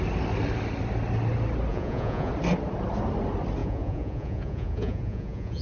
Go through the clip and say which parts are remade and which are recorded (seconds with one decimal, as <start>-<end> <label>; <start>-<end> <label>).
0.0-1.7 recorded; 1.7-2.3 remade; 2.3-3.6 recorded; 3.6-5.6 remade